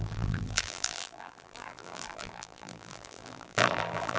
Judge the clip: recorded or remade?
remade